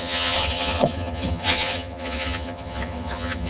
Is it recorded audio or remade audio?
remade